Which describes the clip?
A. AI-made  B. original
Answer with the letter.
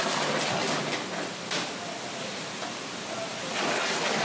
B